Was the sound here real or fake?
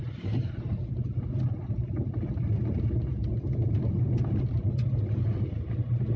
real